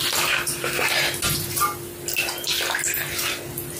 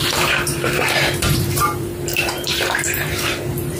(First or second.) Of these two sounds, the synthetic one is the second